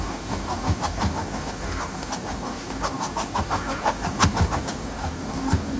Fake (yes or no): yes